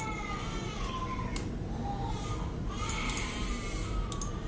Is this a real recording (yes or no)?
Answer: yes